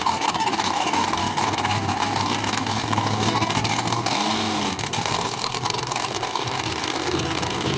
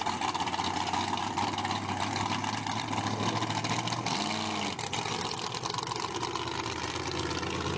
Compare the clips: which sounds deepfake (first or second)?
first